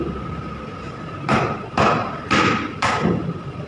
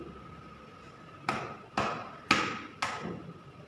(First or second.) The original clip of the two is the second